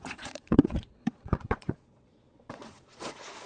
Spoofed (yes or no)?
yes